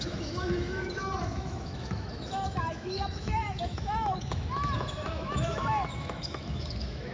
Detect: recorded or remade remade